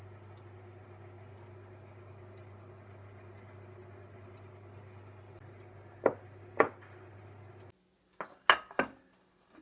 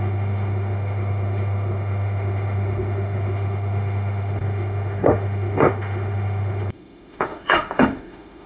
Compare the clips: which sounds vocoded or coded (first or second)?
second